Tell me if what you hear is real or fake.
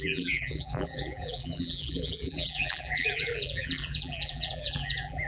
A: fake